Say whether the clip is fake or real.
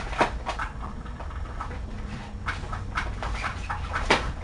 real